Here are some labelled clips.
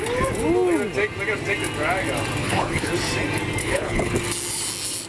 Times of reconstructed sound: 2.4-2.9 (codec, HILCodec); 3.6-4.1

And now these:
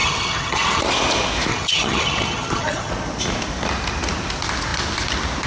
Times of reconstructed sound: 0.0-0.8 (vocoder, HiFi-GAN); 1.5-2.9

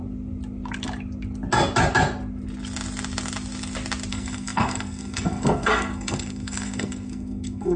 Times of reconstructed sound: 4.1-7.8 (codec, SNAC)

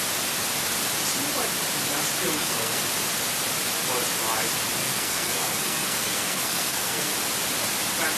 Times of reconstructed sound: 2.3-2.8 (codec, SNAC); 4.8-7.1